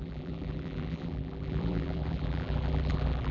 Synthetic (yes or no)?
yes